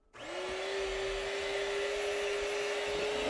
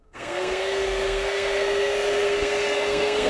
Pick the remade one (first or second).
second